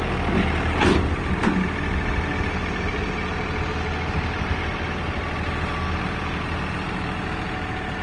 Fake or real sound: real